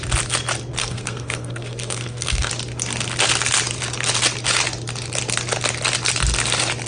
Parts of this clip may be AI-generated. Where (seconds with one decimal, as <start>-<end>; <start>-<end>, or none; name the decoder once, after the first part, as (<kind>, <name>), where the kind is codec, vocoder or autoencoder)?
0.8-2.5 (codec, SNAC)